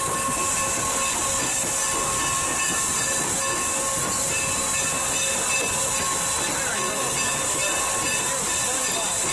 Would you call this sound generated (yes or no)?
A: no